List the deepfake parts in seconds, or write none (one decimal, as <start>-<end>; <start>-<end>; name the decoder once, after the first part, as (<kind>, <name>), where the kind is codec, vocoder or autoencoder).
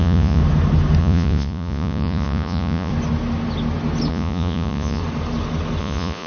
0.0-0.4 (vocoder, Vocos); 1.0-2.9; 4.1-5.0; 5.8-6.3